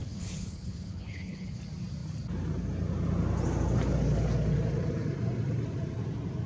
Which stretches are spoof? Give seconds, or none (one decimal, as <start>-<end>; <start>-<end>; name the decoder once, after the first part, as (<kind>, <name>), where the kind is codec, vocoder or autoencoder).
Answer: 0.0-1.6 (codec, HILCodec)